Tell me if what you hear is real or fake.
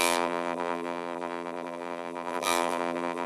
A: fake